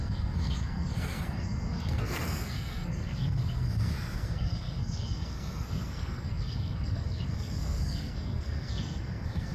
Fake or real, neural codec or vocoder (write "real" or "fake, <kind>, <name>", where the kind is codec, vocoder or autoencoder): fake, codec, SNAC